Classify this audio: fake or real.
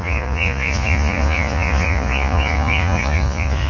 fake